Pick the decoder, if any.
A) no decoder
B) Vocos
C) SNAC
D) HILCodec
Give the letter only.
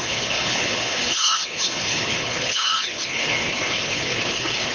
D